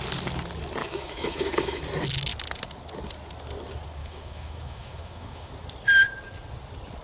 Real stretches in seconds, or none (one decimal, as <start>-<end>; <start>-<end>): 0.0-0.8; 1.8-4.0; 5.5-7.0